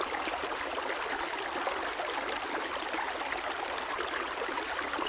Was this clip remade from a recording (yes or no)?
no